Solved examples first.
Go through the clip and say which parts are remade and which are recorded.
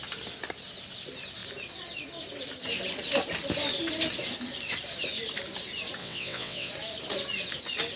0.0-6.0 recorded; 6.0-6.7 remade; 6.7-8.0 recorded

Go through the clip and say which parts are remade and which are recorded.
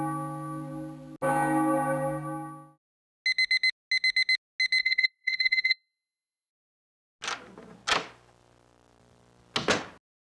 0.0-4.8 recorded; 4.8-6.5 remade; 6.5-10.2 recorded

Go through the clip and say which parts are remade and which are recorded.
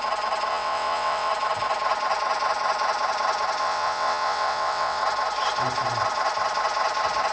0.0-0.5 recorded; 0.5-1.3 remade; 1.3-3.6 recorded; 3.6-5.0 remade; 5.0-7.3 recorded